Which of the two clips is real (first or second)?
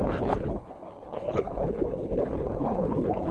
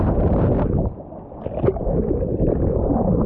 second